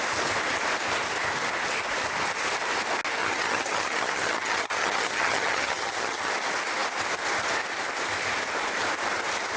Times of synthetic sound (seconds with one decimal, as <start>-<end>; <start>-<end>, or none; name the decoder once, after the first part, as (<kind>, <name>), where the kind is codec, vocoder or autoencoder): 3.2-6.3 (vocoder, HiFi-GAN)